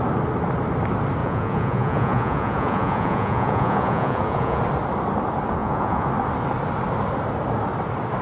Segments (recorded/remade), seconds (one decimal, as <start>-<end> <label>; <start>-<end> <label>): 0.0-1.2 recorded; 1.2-4.6 remade; 4.6-5.6 recorded; 5.6-6.1 remade; 6.1-8.2 recorded